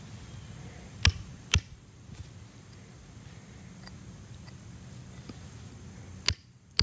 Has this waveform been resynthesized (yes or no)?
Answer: no